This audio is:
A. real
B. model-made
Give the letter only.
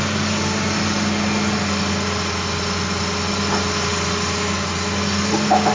A